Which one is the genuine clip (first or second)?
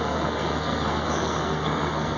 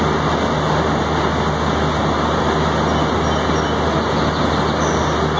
second